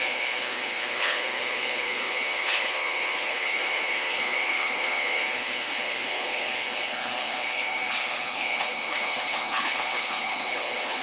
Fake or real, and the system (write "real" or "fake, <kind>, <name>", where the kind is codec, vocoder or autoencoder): fake, codec, HILCodec